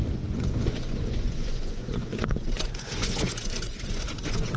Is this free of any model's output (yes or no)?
no